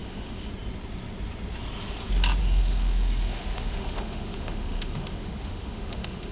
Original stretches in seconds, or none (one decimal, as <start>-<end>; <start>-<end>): 0.5-2.4